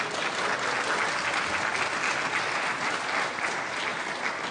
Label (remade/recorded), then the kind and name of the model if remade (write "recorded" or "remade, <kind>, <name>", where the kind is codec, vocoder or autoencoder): recorded